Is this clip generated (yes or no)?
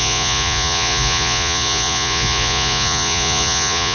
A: yes